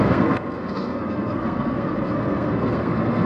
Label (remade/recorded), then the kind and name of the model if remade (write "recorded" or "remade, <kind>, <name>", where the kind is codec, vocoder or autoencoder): remade, codec, SNAC